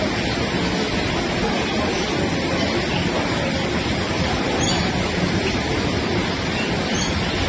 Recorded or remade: recorded